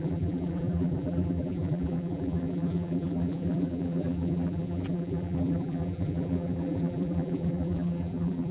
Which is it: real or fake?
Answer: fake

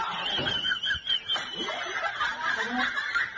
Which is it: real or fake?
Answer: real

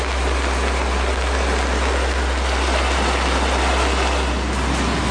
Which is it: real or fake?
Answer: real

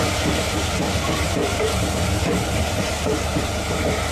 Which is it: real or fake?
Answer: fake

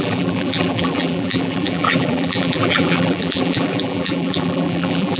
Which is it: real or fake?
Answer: fake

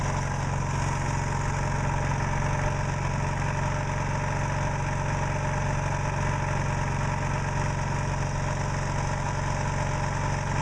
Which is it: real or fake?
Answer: real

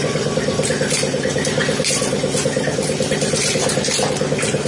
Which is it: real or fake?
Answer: fake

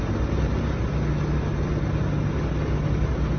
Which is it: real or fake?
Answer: real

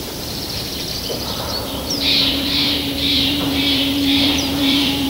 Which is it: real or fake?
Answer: fake